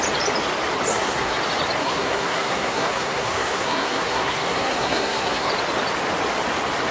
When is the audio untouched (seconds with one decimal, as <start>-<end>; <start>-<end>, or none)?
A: 0.0-0.9; 1.4-1.8; 5.5-6.9